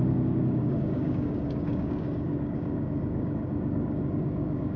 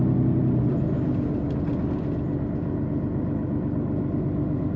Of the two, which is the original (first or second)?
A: second